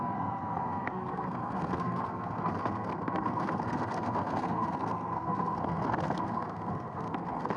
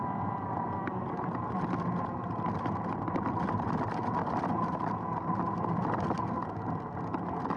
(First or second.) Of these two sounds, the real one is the second